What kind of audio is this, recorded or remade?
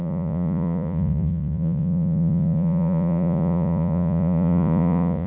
remade